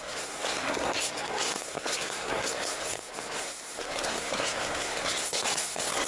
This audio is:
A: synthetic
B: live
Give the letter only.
A